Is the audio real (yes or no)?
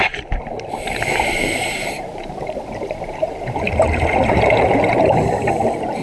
no